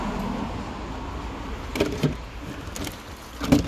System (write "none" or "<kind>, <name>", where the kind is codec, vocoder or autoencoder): none